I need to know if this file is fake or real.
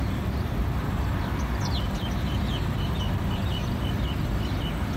real